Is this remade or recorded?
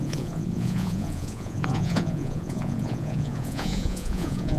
remade